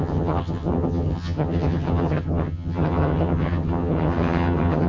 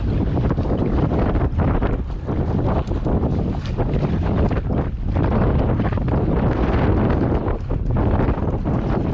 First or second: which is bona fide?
second